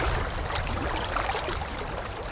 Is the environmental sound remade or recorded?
recorded